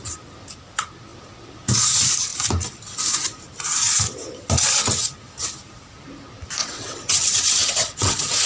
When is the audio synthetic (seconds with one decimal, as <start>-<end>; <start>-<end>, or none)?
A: 6.6-8.5